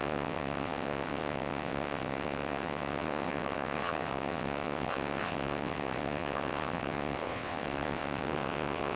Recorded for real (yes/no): no